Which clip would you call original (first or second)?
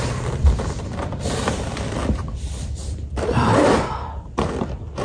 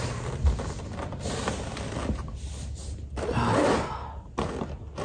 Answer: second